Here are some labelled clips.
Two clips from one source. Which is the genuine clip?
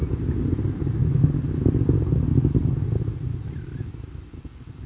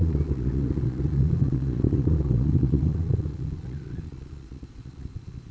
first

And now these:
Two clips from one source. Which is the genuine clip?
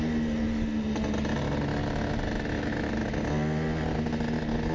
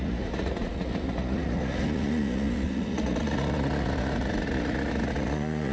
first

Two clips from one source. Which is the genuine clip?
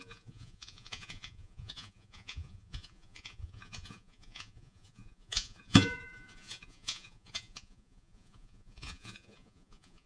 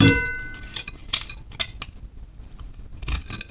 second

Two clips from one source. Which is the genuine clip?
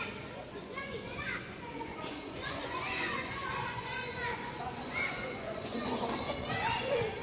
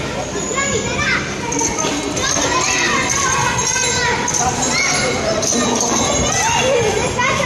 second